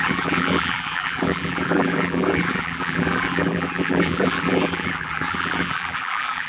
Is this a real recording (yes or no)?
no